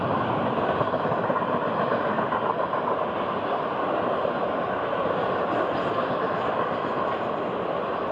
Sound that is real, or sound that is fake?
real